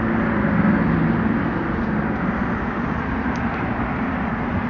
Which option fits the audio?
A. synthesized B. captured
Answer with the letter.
B